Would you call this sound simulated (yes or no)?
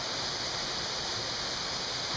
no